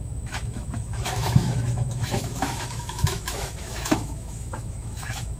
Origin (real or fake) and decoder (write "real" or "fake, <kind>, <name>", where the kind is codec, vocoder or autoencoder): fake, autoencoder, DAC-VAE